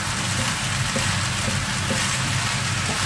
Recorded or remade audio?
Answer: recorded